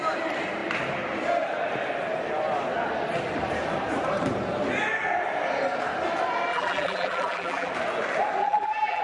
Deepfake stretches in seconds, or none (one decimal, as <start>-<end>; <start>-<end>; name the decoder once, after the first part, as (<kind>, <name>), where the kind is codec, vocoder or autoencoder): 6.5-7.7 (vocoder, BigVGAN v2); 8.4-9.0